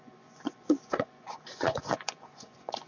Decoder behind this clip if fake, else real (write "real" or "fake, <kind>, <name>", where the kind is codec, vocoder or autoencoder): fake, vocoder, Vocos